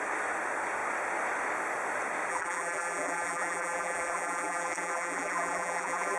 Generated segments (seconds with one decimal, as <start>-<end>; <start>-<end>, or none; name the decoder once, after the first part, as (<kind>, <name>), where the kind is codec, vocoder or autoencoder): 2.3-6.2 (vocoder, BigVGAN v2)